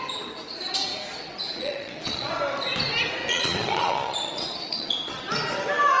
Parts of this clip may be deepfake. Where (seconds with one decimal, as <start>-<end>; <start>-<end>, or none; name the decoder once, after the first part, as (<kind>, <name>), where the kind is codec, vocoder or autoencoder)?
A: 0.9-2.3 (vocoder, Vocos); 3.2-5.2